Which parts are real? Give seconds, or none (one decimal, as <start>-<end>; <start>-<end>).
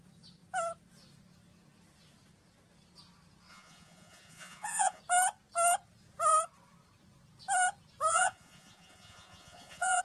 0.0-3.5; 5.0-8.1